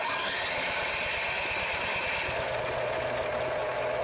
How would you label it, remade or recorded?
recorded